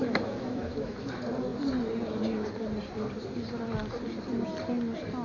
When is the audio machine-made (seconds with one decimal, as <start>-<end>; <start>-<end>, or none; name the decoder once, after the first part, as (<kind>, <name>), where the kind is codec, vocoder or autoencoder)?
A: 0.0-1.1 (autoencoder, DAC-VAE)